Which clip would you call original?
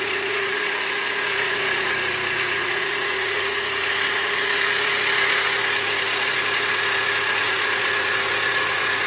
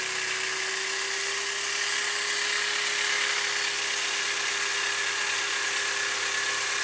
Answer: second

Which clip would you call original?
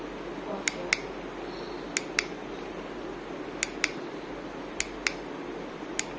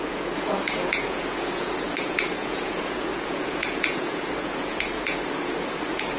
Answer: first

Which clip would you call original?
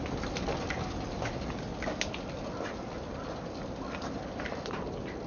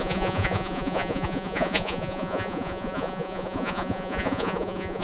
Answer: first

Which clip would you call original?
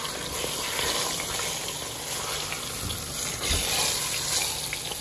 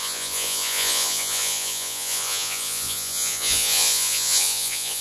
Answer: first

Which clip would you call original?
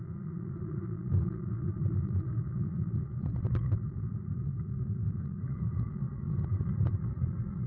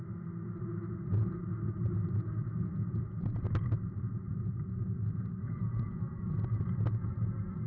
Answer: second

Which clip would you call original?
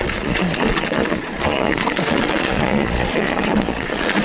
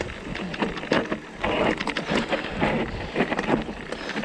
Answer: second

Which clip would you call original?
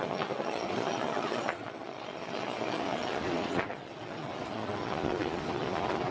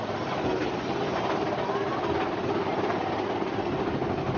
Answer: second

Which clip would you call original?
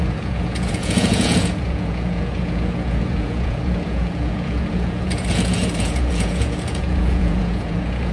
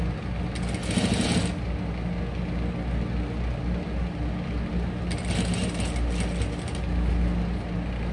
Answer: second